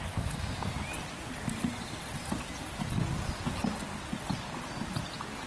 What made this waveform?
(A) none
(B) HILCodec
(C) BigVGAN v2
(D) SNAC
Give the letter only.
A